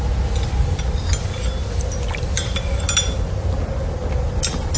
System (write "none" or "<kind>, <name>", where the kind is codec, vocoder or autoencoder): none